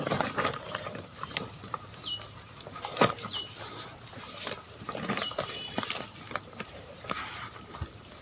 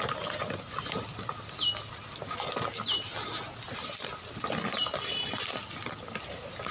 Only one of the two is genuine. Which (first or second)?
second